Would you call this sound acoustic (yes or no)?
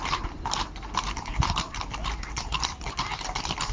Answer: no